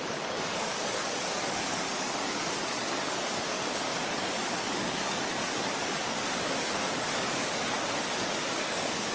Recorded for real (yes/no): no